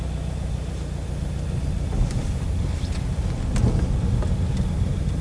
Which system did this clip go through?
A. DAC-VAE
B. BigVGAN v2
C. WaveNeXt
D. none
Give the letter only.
D